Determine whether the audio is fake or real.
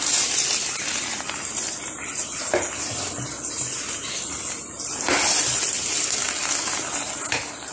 real